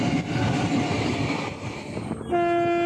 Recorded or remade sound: recorded